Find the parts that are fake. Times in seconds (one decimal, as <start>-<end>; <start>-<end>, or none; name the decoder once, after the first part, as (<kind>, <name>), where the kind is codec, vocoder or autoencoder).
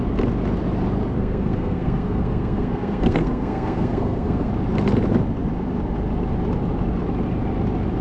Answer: 1.2-4.5 (codec, SNAC)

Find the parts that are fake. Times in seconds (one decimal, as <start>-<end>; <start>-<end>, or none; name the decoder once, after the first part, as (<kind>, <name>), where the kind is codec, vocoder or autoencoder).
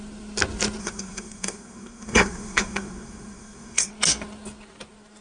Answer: 0.8-3.9 (codec, SNAC)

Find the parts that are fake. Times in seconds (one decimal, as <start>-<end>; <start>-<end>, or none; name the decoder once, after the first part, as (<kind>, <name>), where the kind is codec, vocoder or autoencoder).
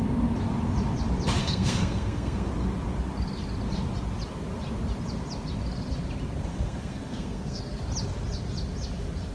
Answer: 1.4-2.5 (codec, SNAC); 6.5-7.6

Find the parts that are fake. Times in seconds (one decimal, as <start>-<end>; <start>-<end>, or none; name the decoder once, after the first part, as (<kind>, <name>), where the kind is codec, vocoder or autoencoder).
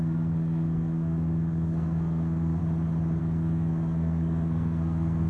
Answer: 0.0-2.6 (codec, SNAC); 3.2-5.3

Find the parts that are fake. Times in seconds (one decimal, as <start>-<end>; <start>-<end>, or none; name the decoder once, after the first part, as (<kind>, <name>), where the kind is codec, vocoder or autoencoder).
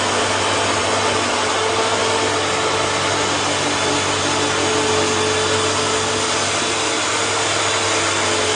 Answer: none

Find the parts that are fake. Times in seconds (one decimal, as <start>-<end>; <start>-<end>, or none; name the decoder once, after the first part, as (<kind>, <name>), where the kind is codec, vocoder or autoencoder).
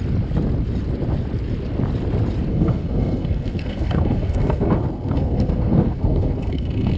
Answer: 2.5-7.0 (codec, SNAC)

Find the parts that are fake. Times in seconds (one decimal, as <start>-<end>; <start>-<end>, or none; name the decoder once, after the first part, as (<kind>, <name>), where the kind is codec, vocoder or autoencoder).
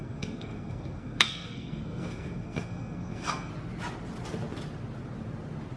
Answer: 0.0-3.5 (codec, SNAC)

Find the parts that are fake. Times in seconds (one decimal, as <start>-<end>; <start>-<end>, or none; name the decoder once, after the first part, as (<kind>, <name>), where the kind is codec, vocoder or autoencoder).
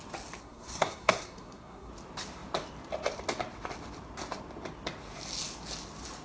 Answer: 0.4-1.9 (codec, SNAC)